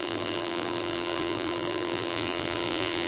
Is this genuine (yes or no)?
no